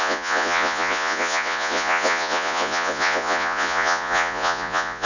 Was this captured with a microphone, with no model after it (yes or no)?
no